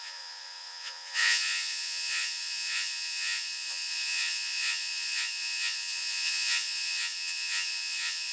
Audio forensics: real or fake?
fake